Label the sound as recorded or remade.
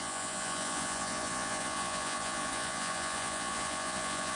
remade